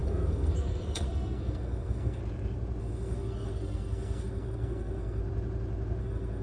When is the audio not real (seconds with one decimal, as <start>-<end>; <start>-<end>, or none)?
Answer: 0.0-2.2; 2.8-5.2; 6.0-6.4